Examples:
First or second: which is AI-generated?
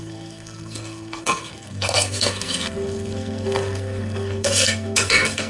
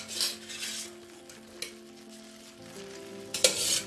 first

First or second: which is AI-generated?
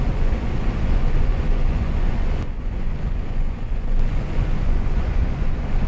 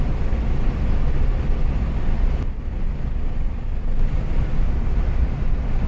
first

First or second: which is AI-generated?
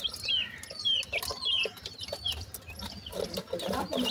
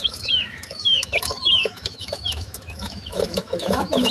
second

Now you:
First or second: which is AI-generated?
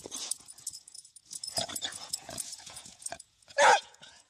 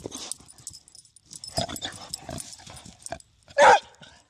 first